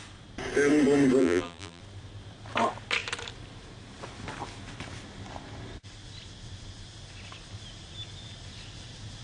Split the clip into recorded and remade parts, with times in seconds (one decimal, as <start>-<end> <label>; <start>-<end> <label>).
0.0-1.2 recorded; 1.2-1.8 remade; 1.8-9.2 recorded